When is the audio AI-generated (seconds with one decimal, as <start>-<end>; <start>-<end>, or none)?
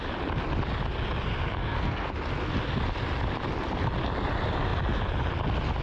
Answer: 1.6-2.1